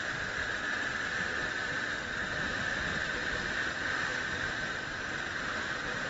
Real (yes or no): yes